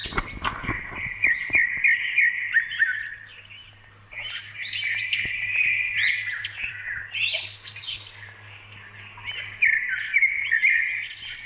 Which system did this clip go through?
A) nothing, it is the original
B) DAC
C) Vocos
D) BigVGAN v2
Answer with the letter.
A